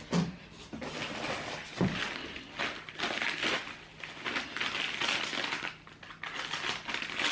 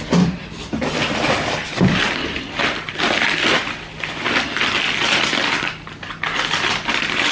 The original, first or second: first